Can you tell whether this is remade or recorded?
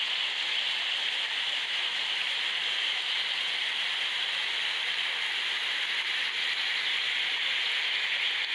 recorded